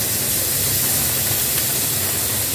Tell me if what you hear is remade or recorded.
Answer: recorded